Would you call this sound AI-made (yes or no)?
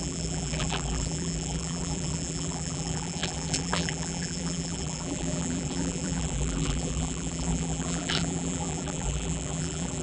yes